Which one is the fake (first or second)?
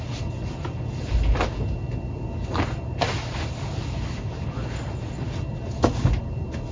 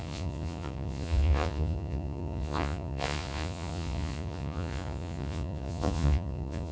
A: second